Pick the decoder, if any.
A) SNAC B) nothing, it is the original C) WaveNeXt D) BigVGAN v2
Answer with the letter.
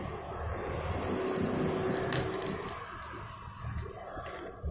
B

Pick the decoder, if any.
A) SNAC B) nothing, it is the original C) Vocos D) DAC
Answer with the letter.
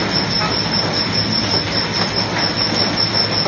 B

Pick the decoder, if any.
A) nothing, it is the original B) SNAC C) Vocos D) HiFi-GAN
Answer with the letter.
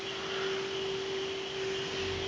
A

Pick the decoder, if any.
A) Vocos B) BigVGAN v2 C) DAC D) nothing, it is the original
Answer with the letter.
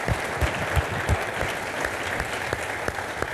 D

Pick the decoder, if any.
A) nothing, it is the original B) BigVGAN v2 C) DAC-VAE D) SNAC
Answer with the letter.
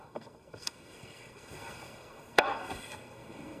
D